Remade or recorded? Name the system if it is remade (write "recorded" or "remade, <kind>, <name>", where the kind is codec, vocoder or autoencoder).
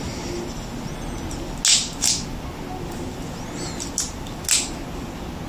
recorded